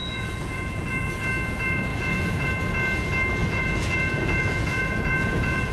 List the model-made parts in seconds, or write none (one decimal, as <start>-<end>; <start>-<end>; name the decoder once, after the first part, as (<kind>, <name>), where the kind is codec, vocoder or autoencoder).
0.0-1.1 (vocoder, Vocos); 1.9-2.5; 3.4-5.7